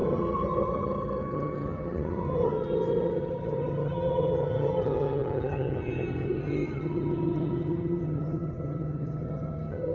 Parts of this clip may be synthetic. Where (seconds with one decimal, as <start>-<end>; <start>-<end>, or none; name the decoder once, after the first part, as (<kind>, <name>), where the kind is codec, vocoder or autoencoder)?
0.0-9.9 (vocoder, HiFi-GAN)